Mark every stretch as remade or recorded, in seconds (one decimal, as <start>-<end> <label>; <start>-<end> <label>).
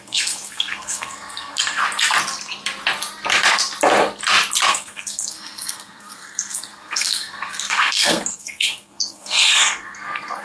0.0-1.8 remade; 1.8-4.7 recorded; 4.7-10.4 remade